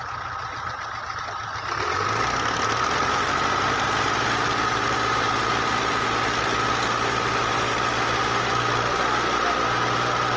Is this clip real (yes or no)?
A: yes